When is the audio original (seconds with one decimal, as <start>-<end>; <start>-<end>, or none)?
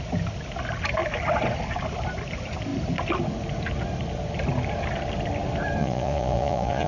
0.0-5.8